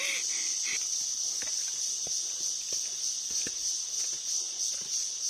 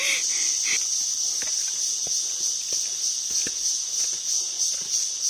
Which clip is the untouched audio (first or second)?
second